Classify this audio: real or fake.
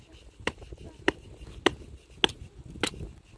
real